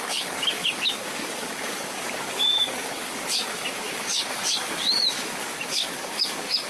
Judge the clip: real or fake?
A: fake